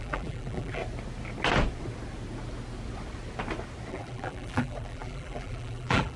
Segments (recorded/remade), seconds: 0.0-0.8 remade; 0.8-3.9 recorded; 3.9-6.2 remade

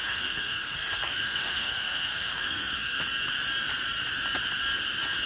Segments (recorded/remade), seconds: 0.0-3.0 remade; 3.0-5.3 recorded

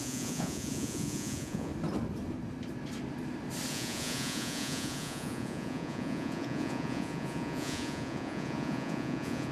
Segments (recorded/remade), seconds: 0.0-1.7 remade; 1.7-3.7 recorded; 3.7-9.5 remade

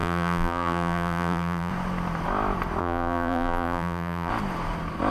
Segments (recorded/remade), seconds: 0.0-1.7 remade; 1.7-2.8 recorded; 2.8-4.3 remade; 4.3-5.1 recorded